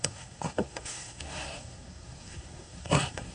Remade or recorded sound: remade